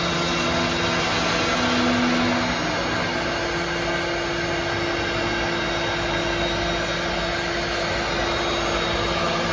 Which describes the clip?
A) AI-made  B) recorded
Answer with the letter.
B